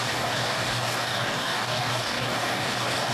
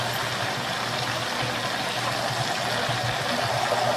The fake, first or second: first